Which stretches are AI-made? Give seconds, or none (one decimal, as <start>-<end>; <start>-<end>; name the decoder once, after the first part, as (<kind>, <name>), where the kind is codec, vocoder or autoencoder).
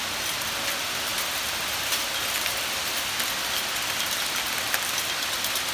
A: none